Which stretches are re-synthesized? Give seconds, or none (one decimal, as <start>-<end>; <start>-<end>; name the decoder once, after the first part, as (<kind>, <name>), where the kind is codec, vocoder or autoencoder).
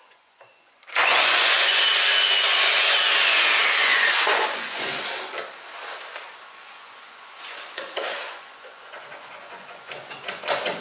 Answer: 0.0-4.9 (vocoder, Vocos); 6.5-10.8